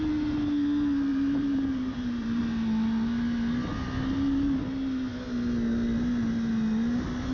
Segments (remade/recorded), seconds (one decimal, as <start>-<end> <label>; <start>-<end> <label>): 0.0-1.1 recorded; 1.1-2.4 remade; 2.4-7.3 recorded